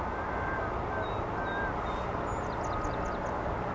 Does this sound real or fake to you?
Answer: real